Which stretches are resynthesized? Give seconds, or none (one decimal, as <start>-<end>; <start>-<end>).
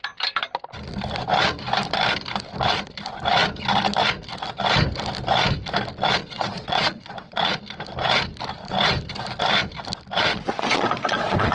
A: 6.2-7.6; 10.3-11.5